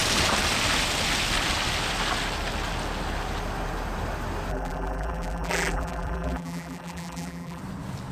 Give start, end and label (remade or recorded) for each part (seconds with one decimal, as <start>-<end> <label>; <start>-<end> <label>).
0.0-4.5 recorded; 4.5-7.6 remade; 7.6-8.1 recorded

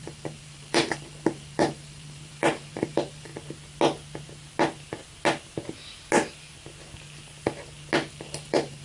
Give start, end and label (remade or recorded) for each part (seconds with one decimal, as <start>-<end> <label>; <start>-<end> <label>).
0.0-3.3 remade; 3.3-8.1 recorded; 8.1-8.8 remade